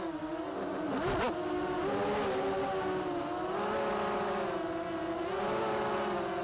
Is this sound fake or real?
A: real